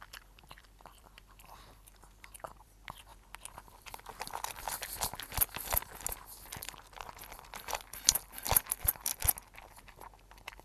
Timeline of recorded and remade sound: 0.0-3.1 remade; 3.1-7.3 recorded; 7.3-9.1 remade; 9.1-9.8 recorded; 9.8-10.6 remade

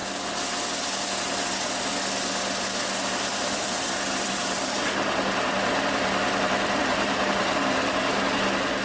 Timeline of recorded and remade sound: 0.0-3.3 recorded; 3.3-8.2 remade; 8.2-8.8 recorded